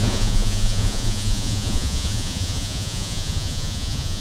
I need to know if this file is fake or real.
fake